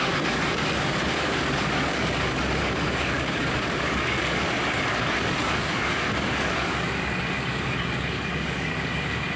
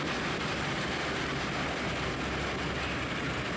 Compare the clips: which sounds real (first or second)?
second